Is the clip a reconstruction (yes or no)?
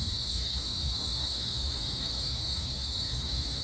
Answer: yes